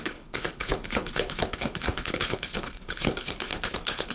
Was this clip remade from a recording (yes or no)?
yes